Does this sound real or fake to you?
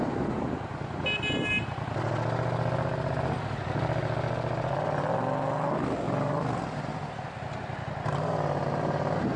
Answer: real